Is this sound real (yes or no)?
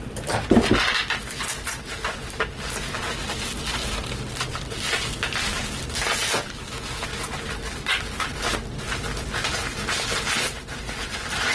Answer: yes